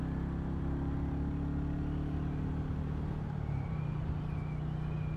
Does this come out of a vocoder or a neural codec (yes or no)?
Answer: no